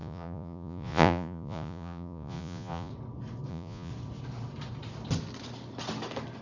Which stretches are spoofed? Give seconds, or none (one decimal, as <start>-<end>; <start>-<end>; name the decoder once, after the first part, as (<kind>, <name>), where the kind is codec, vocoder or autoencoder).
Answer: 0.0-2.9 (vocoder, Vocos); 3.5-3.9